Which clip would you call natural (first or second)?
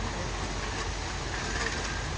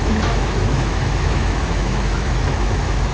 first